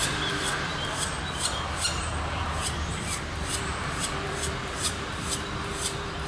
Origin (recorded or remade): remade